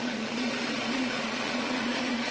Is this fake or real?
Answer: fake